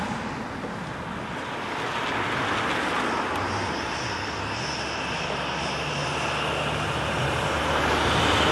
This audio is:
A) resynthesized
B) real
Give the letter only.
B